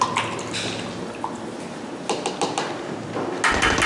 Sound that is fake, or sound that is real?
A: real